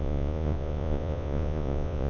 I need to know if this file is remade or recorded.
remade